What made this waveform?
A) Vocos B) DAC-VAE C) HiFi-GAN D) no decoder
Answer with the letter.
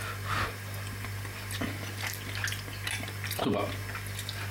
D